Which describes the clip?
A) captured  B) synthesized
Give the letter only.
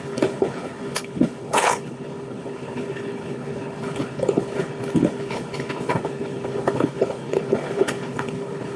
B